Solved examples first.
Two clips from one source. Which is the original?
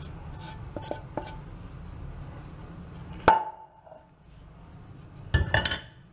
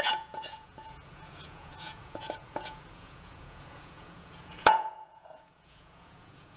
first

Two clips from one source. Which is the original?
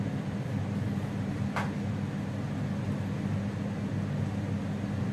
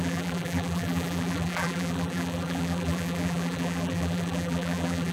first